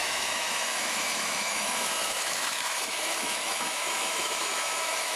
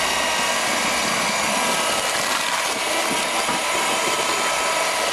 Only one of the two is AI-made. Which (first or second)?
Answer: first